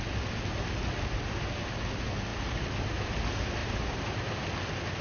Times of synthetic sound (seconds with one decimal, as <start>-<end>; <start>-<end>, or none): 3.6-4.4

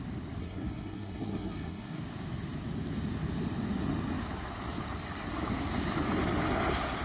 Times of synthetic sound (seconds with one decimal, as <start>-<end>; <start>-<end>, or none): 0.4-2.0